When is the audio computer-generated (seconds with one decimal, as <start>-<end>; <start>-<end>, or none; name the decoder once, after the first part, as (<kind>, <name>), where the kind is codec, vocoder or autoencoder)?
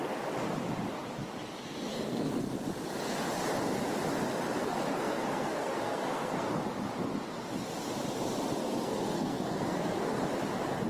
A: 1.9-2.5 (codec, SNAC); 4.6-6.5; 8.6-10.2